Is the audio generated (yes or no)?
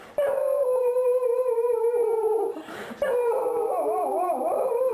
yes